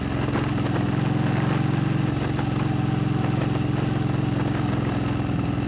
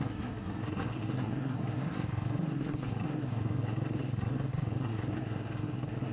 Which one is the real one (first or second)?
first